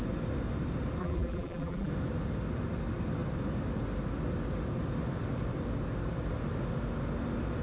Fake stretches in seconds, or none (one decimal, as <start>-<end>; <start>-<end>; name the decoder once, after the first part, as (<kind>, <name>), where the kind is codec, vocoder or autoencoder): 1.0-1.9 (vocoder, BigVGAN v2)